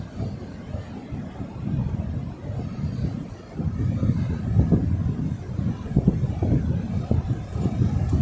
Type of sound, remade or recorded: recorded